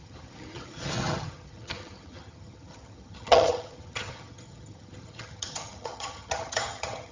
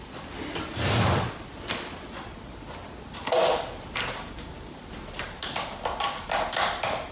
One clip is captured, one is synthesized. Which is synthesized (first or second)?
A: first